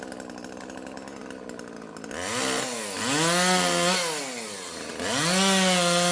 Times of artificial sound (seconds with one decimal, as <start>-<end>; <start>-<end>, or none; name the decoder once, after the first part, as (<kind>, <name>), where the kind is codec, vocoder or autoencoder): none